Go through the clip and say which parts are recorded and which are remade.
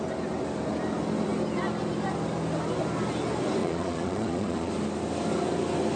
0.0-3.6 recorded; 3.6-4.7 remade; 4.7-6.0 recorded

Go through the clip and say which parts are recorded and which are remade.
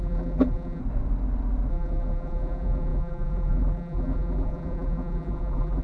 0.0-0.8 remade; 0.8-1.7 recorded; 1.7-5.8 remade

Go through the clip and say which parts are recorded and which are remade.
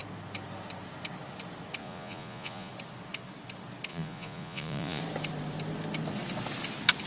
0.0-1.8 recorded; 1.8-2.7 remade; 2.7-3.9 recorded; 3.9-5.0 remade; 5.0-7.1 recorded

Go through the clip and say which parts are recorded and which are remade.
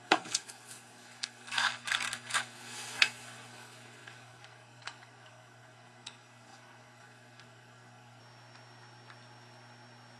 0.0-8.2 remade; 8.2-10.2 recorded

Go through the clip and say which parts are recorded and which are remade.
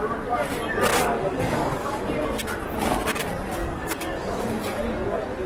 0.0-0.9 recorded; 0.9-2.0 remade; 2.0-3.6 recorded; 3.6-4.6 remade; 4.6-5.5 recorded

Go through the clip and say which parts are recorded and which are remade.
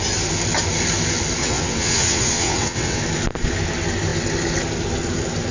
0.0-1.4 recorded; 1.4-3.0 remade; 3.0-5.5 recorded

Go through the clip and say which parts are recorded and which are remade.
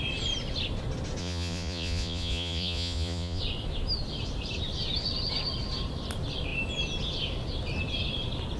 0.0-1.2 recorded; 1.2-3.4 remade; 3.4-8.6 recorded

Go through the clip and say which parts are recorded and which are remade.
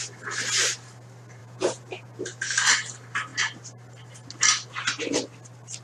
0.0-1.4 recorded; 1.4-2.2 remade; 2.2-5.8 recorded